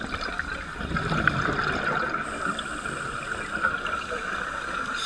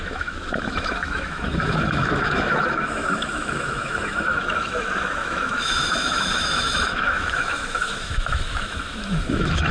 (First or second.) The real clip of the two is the first